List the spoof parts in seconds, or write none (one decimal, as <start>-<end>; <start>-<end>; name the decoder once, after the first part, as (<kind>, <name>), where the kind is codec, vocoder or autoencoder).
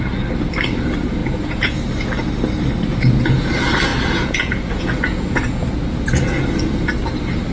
1.2-1.8 (vocoder, Vocos); 2.9-3.5; 3.9-6.4